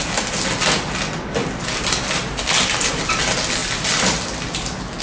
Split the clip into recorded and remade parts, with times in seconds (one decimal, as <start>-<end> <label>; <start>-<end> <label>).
0.0-5.0 recorded